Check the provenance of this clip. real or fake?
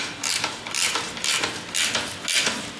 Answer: real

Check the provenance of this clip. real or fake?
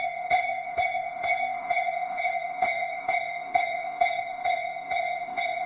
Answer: fake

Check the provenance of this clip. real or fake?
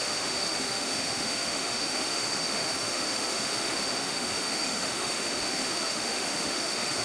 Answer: fake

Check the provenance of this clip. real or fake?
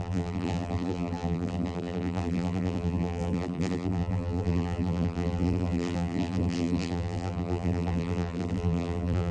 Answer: fake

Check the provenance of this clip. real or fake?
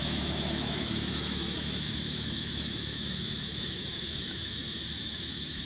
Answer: fake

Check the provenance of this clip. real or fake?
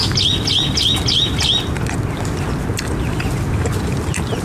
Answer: real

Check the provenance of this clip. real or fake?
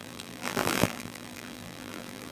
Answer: fake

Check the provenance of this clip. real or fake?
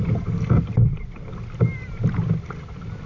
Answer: real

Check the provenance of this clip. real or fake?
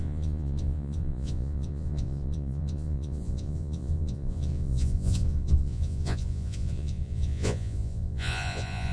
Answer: fake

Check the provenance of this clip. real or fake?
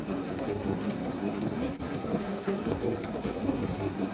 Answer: fake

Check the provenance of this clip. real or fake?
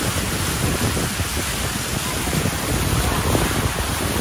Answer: real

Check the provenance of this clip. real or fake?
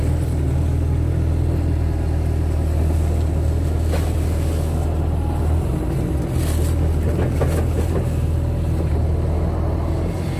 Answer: real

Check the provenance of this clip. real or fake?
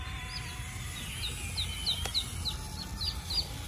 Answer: real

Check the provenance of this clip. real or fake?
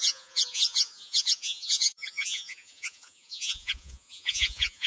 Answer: fake